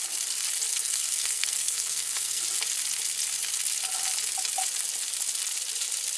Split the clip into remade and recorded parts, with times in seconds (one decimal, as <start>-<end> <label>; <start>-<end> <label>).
0.0-0.7 recorded; 0.7-2.4 remade; 2.4-6.2 recorded